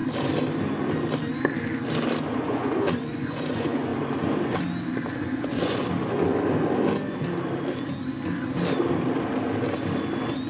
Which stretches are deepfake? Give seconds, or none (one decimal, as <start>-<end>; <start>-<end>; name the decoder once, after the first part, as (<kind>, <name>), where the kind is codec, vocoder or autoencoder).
2.3-3.9 (vocoder, Vocos); 5.2-5.8